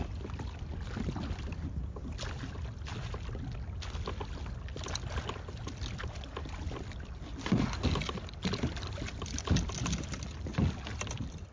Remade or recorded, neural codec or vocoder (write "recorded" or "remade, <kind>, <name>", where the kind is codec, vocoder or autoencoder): recorded